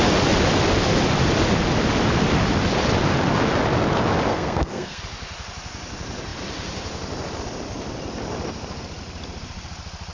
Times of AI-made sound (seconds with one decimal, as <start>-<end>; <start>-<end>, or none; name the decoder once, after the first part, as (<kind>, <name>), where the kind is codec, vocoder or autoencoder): 4.3-5.0 (codec, SNAC)